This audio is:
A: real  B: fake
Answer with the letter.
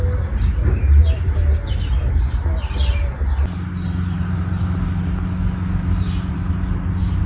A